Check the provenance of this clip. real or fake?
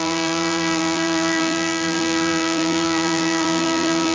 fake